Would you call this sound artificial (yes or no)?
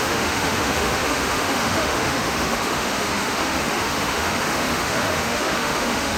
yes